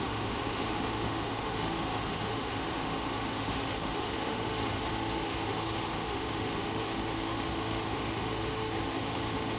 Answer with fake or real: fake